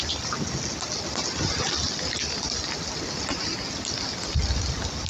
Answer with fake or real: real